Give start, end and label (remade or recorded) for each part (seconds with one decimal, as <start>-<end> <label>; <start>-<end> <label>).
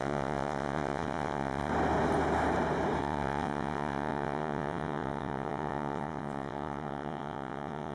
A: 0.0-1.7 remade; 1.7-3.0 recorded; 3.0-7.9 remade